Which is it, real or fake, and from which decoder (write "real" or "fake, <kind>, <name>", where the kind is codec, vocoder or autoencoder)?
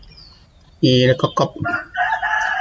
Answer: real